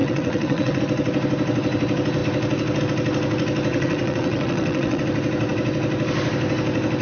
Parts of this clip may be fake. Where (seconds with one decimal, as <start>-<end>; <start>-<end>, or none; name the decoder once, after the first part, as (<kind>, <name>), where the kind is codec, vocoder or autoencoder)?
0.0-0.8 (vocoder, WaveNeXt); 3.7-5.0